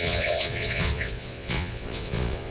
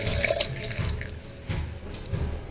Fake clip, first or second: first